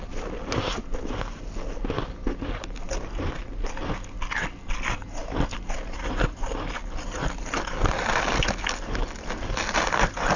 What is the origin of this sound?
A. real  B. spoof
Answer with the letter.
A